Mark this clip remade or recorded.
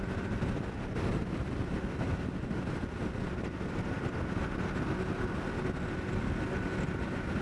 recorded